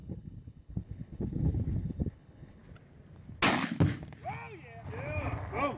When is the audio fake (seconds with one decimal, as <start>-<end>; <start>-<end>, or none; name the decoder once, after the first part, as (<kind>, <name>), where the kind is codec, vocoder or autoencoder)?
0.0-2.6 (codec, HILCodec)